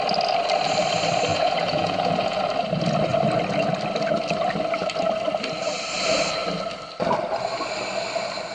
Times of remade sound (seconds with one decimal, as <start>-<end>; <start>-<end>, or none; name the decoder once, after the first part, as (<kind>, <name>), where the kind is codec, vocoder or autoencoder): 1.3-2.4 (vocoder, Vocos)